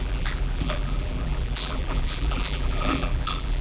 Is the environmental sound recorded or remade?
remade